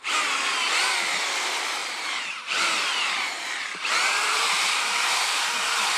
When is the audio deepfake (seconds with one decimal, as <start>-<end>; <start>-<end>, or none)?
1.8-5.4